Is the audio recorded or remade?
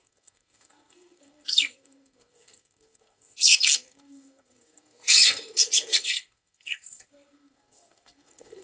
remade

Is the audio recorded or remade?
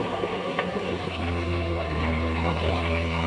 remade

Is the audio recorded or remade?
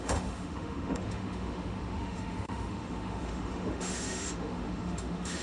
remade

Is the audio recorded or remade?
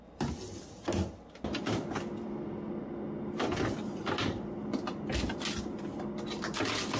recorded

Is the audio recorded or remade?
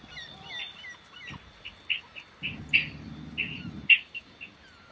recorded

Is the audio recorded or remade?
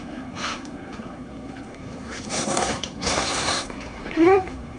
remade